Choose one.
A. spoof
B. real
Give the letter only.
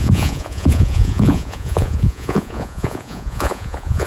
A